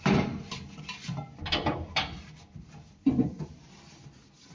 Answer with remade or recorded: recorded